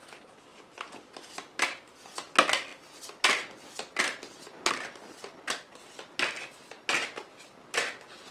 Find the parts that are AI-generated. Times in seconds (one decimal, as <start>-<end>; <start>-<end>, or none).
none